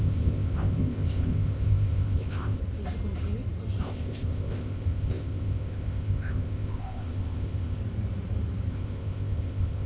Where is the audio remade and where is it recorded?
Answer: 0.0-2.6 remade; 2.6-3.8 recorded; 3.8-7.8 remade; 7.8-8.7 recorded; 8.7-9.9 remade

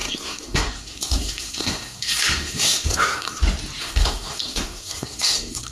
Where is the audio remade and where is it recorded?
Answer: 0.0-3.4 remade; 3.4-3.8 recorded; 3.8-5.7 remade